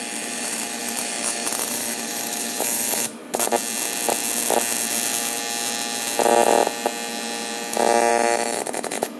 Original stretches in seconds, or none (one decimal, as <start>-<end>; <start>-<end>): 3.2-8.1